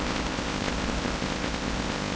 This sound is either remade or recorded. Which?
remade